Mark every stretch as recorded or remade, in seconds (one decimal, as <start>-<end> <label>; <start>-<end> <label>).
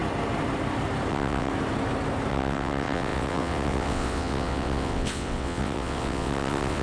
0.0-1.1 recorded; 1.1-1.5 remade; 1.5-2.3 recorded; 2.3-6.8 remade